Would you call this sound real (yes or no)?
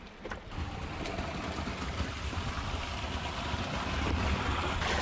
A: yes